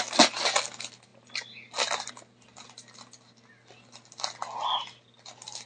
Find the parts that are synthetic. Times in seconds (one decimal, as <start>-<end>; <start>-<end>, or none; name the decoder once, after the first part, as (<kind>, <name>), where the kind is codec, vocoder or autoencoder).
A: none